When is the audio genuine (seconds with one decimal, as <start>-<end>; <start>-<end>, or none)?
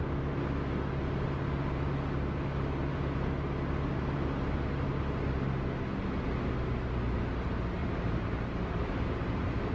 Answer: 0.0-7.8; 9.0-9.7